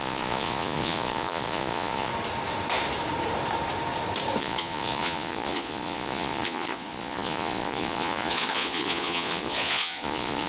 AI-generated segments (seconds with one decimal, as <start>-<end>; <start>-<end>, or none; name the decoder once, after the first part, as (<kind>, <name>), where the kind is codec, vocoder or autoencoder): 0.0-2.1 (vocoder, Vocos); 4.4-10.5